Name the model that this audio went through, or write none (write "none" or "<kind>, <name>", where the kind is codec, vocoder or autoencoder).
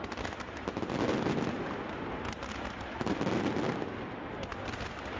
none